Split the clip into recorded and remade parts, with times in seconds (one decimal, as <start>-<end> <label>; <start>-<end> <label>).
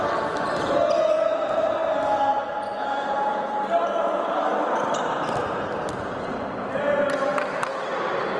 0.0-8.4 recorded